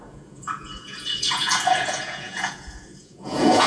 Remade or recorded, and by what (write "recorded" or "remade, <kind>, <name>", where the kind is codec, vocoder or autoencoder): remade, vocoder, Vocos